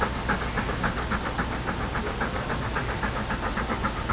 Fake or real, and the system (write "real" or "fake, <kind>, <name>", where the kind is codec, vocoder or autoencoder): real